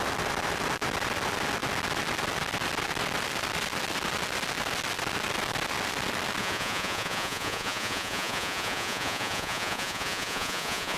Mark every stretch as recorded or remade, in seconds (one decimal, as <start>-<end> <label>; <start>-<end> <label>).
0.0-6.4 recorded; 6.4-11.0 remade